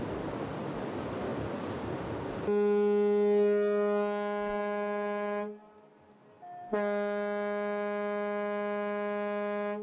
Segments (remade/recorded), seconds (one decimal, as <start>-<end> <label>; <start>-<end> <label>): 0.0-9.8 recorded